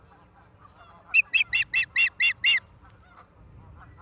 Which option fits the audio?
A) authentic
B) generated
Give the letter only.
A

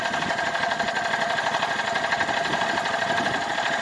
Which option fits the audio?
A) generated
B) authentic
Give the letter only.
B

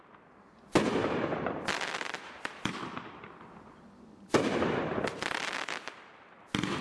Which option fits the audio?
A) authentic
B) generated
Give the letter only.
A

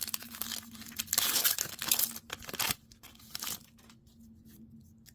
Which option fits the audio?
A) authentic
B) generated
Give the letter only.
A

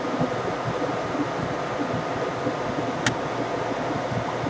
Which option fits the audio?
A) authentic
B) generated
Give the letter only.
A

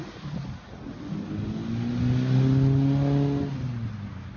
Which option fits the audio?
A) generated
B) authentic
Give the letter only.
B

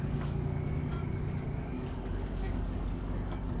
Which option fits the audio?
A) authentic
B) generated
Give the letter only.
B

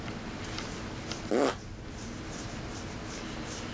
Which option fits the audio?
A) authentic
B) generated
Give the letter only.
A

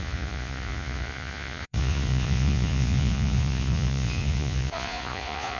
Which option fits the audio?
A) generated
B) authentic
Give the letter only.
A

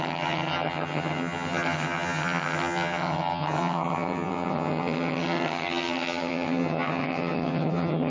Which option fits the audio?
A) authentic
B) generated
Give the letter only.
B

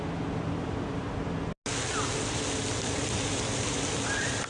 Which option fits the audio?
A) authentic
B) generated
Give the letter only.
A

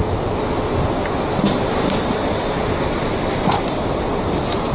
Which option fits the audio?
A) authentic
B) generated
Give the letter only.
A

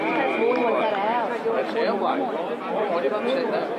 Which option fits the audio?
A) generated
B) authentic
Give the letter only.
B